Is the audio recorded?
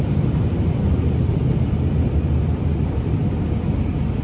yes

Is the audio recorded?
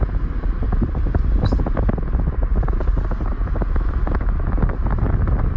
yes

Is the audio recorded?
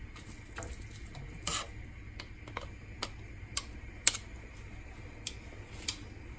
yes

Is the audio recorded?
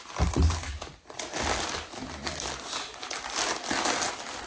yes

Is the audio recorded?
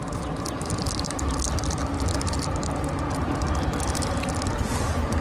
yes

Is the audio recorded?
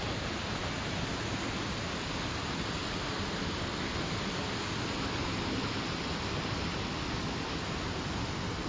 yes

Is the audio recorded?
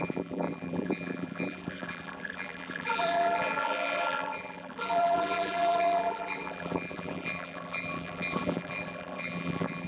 no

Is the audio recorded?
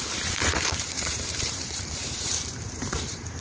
no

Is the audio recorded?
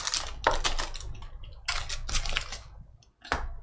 yes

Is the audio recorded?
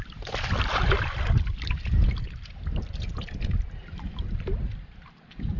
yes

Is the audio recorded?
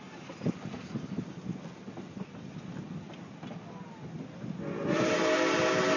yes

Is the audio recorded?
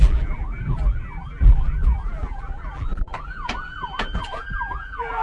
no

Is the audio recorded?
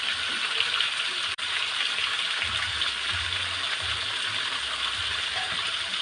no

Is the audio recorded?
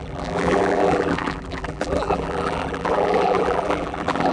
no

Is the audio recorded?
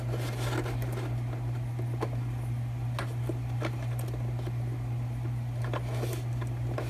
yes